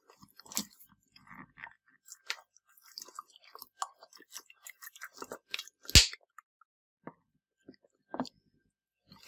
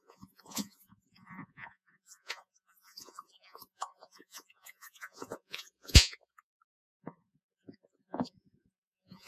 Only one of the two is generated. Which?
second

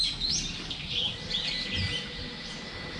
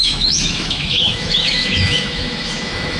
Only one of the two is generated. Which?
second